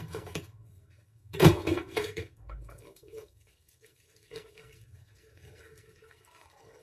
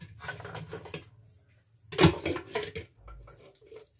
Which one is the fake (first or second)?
first